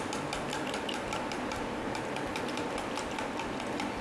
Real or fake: real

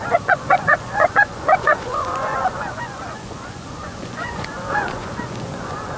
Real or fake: fake